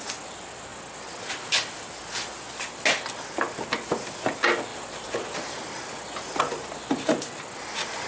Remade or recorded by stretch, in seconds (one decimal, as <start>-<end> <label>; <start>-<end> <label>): 0.0-0.7 recorded; 0.7-1.9 remade; 1.9-4.7 recorded; 4.7-6.4 remade; 6.4-8.1 recorded